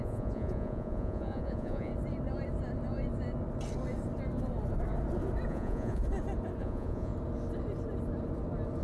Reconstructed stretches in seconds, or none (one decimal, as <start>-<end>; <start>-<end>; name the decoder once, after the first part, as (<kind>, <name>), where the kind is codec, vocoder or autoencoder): 0.0-1.9 (vocoder, Vocos); 5.5-6.0; 6.6-7.1

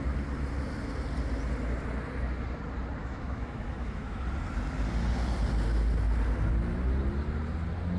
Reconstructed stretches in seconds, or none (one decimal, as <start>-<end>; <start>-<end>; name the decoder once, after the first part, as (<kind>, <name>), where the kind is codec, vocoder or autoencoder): 3.0-4.2 (autoencoder, DAC-VAE)

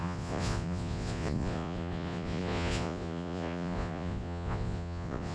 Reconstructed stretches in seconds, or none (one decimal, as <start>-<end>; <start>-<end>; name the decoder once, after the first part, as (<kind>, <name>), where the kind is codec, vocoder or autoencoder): 0.0-5.3 (vocoder, Vocos)

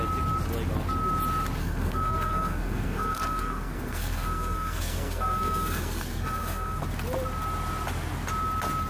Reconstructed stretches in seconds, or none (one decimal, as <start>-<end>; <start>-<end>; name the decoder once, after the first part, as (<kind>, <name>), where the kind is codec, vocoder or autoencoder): 1.6-6.8 (codec, SNAC)